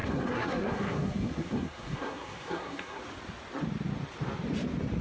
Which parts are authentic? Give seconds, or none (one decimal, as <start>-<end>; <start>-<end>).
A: 3.0-5.0